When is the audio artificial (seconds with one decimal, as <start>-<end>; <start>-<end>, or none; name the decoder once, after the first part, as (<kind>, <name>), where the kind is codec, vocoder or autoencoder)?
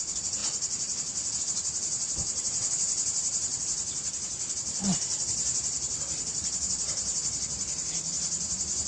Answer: 0.0-0.4 (vocoder, BigVGAN v2); 1.4-8.9